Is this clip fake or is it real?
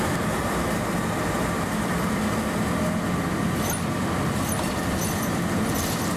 real